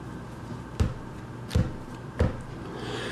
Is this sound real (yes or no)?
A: yes